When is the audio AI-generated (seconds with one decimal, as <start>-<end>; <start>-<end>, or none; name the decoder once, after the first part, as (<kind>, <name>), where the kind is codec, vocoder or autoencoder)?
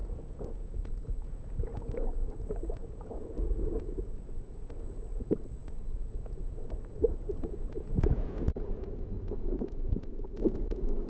0.0-11.1 (vocoder, Vocos)